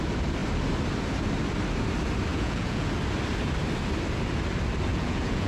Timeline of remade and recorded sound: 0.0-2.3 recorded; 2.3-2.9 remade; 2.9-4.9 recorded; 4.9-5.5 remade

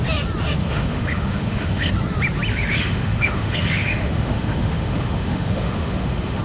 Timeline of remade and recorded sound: 0.0-0.6 recorded; 0.6-1.9 remade; 1.9-2.5 recorded; 2.5-6.4 remade

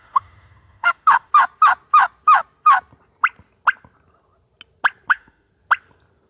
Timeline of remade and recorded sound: 0.0-1.3 remade; 1.3-5.1 recorded; 5.1-5.5 remade; 5.5-6.3 recorded

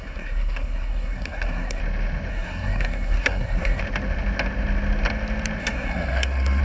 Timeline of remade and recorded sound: 0.0-1.8 remade; 1.8-2.3 recorded; 2.3-3.8 remade; 3.8-5.6 recorded; 5.6-6.6 remade